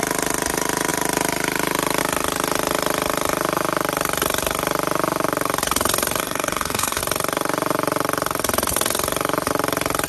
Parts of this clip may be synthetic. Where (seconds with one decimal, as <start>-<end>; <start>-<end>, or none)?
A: 6.2-7.0